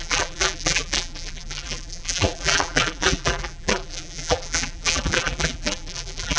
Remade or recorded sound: remade